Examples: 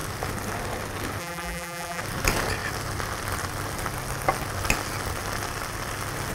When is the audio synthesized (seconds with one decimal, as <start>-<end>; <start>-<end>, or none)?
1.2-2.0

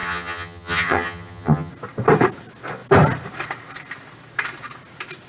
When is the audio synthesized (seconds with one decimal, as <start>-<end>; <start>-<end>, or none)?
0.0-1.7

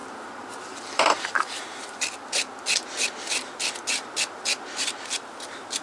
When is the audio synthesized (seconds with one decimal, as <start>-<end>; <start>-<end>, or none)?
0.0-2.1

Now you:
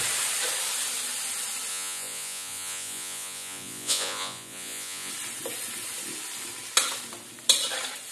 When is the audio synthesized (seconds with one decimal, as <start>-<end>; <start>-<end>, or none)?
1.7-5.1

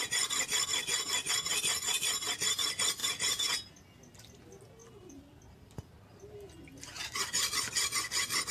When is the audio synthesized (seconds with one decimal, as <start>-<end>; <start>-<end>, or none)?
3.0-3.7

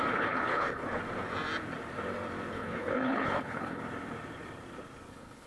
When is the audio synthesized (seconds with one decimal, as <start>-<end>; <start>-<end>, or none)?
0.0-1.0; 2.5-3.8; 5.1-5.5

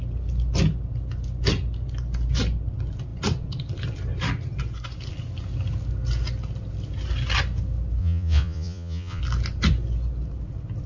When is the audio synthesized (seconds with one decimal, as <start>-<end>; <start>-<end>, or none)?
8.0-9.2

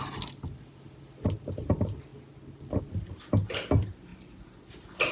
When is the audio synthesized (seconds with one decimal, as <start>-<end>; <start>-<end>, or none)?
none